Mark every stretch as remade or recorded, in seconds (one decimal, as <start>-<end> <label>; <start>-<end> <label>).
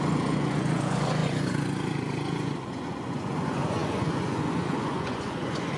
0.0-5.8 remade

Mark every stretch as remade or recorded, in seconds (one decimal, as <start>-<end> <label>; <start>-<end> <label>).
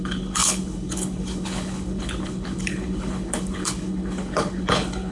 0.0-5.1 remade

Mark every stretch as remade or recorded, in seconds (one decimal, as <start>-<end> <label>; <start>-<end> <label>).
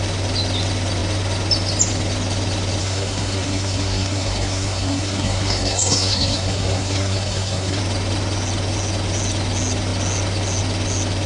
0.0-2.8 recorded; 2.8-7.8 remade; 7.8-11.3 recorded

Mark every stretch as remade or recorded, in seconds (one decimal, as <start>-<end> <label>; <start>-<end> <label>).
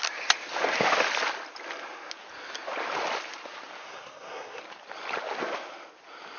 0.0-3.8 recorded; 3.8-4.6 remade; 4.6-6.4 recorded